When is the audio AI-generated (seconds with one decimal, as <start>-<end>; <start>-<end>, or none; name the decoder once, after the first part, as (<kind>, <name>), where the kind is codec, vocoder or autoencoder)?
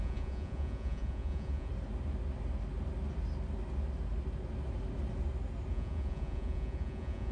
0.0-1.7 (vocoder, Vocos); 5.7-7.3